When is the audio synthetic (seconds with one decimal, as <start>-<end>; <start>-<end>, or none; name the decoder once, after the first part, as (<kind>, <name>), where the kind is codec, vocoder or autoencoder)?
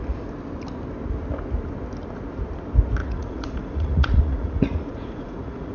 3.0-5.7 (vocoder, Vocos)